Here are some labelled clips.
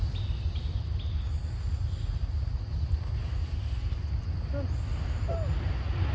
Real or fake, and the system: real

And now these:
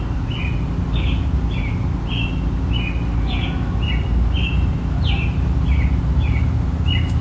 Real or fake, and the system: real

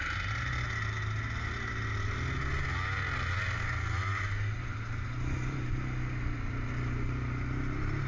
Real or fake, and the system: real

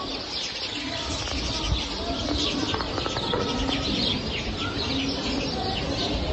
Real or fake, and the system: real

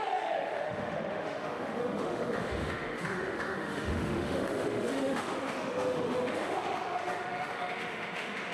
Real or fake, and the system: fake, autoencoder, DAC-VAE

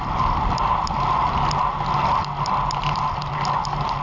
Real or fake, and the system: real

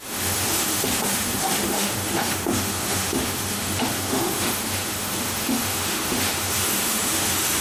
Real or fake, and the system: fake, autoencoder, DAC-VAE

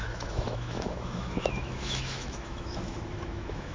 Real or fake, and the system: fake, autoencoder, DAC-VAE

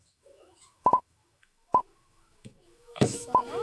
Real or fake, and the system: fake, autoencoder, DAC-VAE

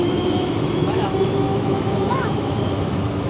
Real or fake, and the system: fake, autoencoder, DAC-VAE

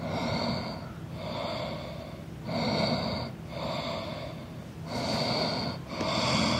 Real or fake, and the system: real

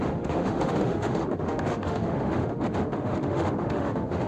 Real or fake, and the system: fake, autoencoder, DAC-VAE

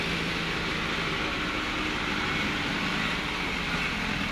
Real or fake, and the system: real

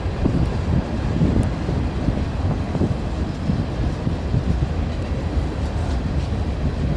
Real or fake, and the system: real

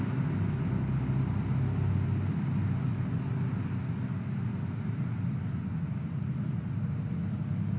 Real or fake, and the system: real